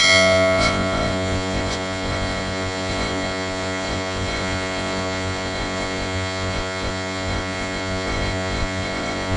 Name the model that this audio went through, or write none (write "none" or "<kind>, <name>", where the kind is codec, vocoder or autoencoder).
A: vocoder, Vocos